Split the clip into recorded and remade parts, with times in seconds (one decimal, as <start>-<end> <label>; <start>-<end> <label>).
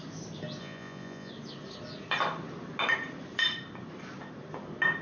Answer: 0.0-0.6 recorded; 0.6-1.3 remade; 1.3-5.0 recorded